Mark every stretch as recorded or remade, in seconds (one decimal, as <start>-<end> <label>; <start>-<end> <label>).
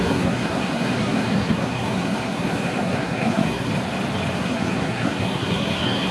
0.0-3.7 remade; 3.7-4.3 recorded; 4.3-6.1 remade